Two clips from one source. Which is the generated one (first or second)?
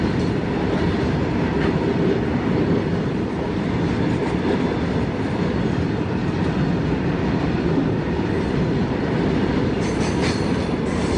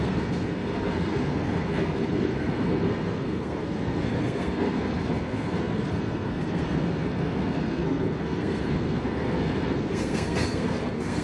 second